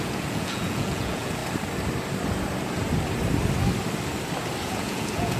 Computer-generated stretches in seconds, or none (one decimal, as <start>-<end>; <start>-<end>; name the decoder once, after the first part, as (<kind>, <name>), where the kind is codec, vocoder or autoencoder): 0.0-1.4 (vocoder, Vocos); 4.6-5.4